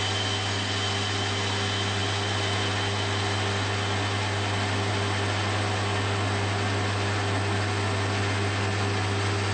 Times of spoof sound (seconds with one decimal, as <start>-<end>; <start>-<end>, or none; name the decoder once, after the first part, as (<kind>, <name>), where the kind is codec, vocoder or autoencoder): none